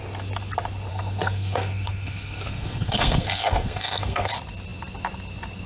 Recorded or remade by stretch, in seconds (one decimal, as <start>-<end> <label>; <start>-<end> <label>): 0.0-0.9 recorded; 0.9-4.3 remade; 4.3-5.7 recorded